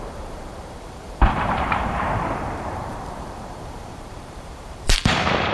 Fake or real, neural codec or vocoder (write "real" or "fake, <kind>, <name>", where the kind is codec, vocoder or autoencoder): fake, vocoder, BigVGAN v2